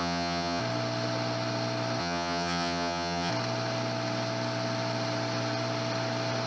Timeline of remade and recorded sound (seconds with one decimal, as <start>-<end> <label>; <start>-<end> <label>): 0.0-0.6 remade; 0.6-2.0 recorded; 2.0-3.3 remade; 3.3-6.5 recorded